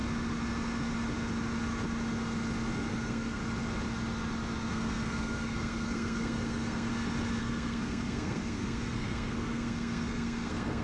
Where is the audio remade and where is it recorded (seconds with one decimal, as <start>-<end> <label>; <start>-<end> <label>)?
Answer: 0.0-2.9 recorded; 2.9-3.4 remade; 3.4-4.7 recorded; 4.7-6.9 remade; 6.9-7.4 recorded; 7.4-10.8 remade